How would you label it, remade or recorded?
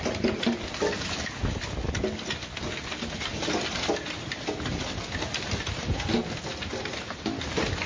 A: recorded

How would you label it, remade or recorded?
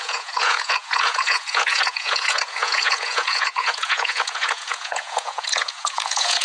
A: remade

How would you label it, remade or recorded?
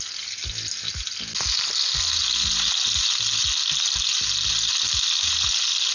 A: recorded